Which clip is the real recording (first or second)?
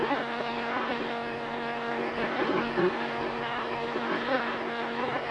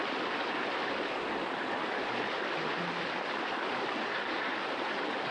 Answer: second